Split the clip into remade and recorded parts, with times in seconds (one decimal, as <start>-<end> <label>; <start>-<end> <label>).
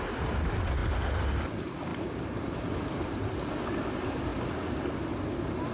0.0-0.8 recorded; 0.8-1.5 remade; 1.5-1.9 recorded; 1.9-3.3 remade; 3.3-5.7 recorded